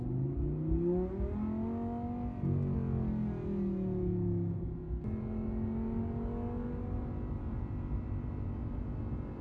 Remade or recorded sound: recorded